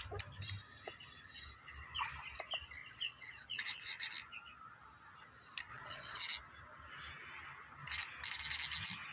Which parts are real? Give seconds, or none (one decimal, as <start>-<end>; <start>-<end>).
0.0-2.8; 4.1-5.7; 6.2-9.1